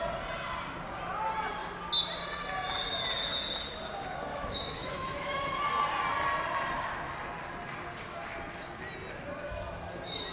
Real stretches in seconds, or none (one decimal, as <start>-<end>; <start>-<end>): 0.0-4.3; 5.7-10.3